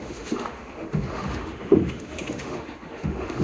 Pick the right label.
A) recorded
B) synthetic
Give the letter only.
B